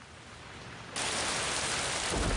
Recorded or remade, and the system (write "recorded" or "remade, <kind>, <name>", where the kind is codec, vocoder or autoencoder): recorded